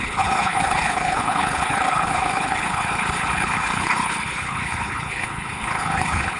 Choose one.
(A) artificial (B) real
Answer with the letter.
A